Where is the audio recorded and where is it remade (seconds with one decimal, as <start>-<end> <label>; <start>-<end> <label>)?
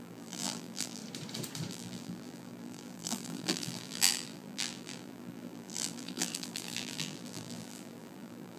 0.0-1.0 remade; 1.0-1.7 recorded; 1.7-8.6 remade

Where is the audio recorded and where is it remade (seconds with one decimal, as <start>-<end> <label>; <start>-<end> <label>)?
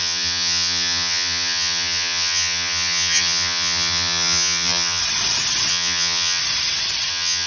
0.0-5.0 remade; 5.0-5.7 recorded; 5.7-6.4 remade; 6.4-7.1 recorded; 7.1-7.5 remade